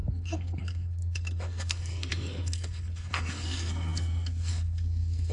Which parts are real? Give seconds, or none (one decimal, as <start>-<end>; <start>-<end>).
none